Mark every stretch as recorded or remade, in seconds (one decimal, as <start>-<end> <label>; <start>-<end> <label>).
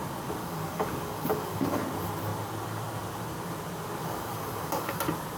0.0-0.4 recorded; 0.4-1.8 remade; 1.8-4.0 recorded; 4.0-5.0 remade; 5.0-5.4 recorded